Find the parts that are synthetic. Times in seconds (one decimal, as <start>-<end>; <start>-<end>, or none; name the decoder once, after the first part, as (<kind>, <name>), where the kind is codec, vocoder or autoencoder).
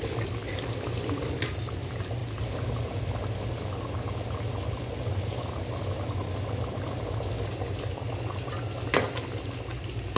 none